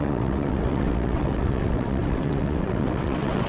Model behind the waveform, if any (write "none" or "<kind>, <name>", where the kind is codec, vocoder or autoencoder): vocoder, WaveNeXt